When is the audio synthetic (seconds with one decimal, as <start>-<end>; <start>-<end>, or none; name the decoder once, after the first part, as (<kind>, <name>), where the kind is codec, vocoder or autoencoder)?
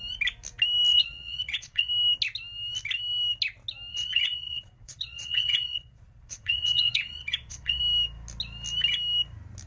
0.9-1.9 (vocoder, Vocos); 3.9-7.8